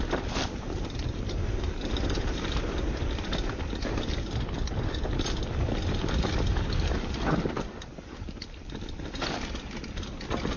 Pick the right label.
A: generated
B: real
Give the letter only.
B